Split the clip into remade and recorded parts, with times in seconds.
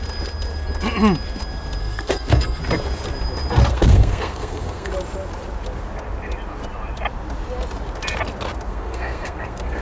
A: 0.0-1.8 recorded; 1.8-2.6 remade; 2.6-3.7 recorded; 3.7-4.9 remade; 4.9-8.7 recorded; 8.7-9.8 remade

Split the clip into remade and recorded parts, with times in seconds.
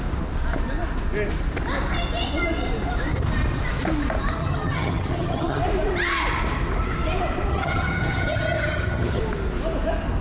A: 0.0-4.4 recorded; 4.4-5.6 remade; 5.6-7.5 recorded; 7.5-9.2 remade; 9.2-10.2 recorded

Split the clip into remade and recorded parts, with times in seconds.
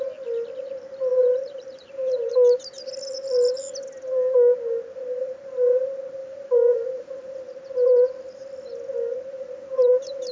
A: 0.0-1.1 recorded; 1.1-2.3 remade; 2.3-6.2 recorded; 6.2-7.4 remade; 7.4-10.3 recorded